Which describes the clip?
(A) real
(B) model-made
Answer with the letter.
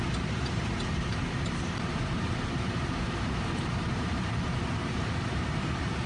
B